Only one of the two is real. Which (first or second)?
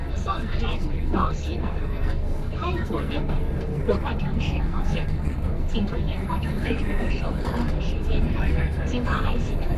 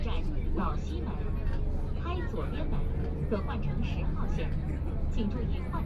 second